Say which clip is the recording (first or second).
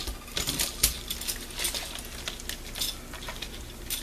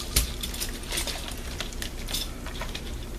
first